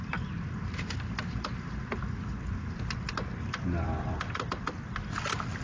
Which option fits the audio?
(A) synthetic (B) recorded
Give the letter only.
B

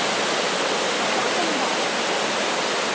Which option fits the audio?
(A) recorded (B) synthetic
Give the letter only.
A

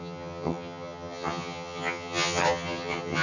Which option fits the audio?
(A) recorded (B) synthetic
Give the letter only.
B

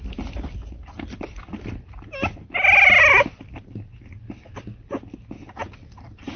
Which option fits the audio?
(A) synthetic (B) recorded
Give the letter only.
B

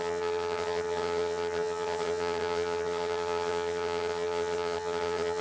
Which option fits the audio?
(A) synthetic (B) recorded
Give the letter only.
A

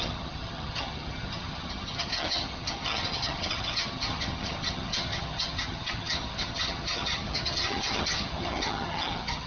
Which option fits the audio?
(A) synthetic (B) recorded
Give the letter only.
A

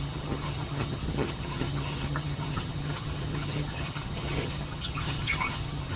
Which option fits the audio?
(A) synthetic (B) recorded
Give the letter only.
A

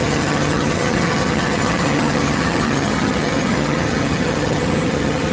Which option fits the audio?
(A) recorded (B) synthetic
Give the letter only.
B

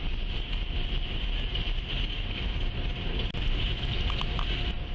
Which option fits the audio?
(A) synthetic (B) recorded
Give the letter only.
B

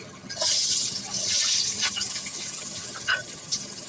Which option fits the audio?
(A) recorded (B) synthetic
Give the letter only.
B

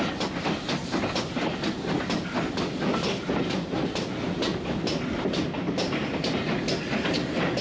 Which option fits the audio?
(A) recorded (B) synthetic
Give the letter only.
A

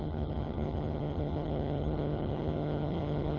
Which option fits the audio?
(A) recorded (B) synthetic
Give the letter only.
B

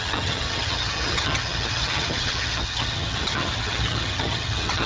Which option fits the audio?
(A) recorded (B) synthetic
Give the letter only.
B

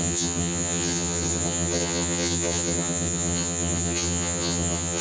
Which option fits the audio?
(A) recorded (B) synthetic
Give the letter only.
B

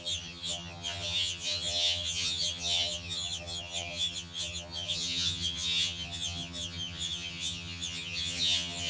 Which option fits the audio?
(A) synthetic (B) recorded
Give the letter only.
A